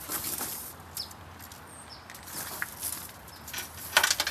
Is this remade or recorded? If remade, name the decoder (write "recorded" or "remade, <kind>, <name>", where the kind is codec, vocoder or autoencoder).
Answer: recorded